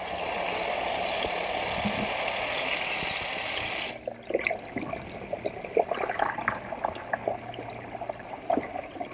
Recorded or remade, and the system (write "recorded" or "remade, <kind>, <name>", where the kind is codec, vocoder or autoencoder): recorded